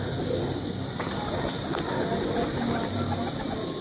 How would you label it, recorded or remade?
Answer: recorded